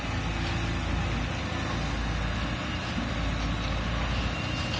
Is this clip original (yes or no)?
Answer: yes